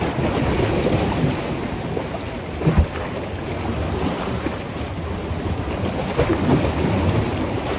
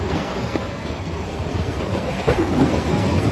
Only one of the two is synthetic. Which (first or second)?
second